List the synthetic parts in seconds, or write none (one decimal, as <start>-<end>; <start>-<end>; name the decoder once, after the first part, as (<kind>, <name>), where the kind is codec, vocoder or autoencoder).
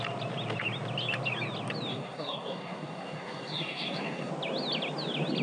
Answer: 1.9-4.3 (codec, SNAC)